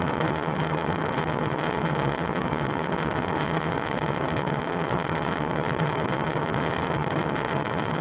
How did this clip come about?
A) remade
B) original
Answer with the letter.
A